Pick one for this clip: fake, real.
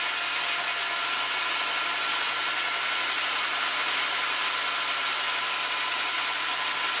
real